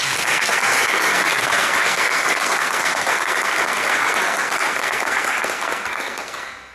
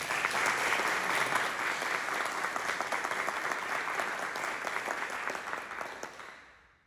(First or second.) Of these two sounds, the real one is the second